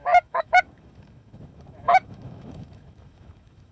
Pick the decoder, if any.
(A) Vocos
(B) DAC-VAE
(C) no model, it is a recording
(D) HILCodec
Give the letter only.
B